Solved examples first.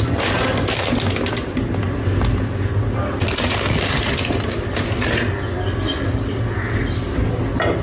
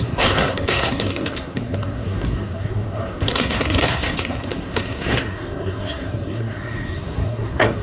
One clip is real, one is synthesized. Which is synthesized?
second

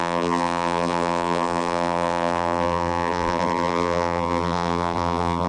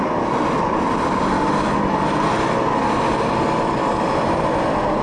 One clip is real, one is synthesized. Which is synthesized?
first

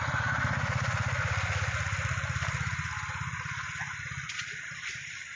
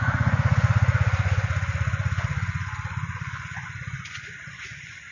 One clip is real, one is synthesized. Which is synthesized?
second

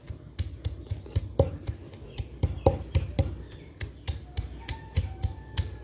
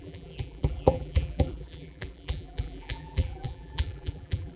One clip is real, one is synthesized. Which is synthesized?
second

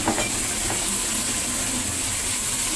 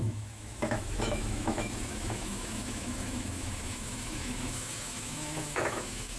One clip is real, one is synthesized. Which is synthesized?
second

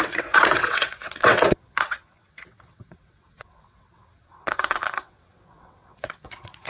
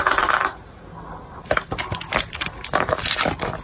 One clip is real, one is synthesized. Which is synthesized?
first